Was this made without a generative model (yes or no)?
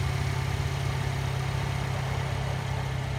yes